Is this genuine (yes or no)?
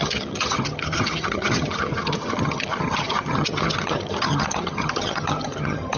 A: no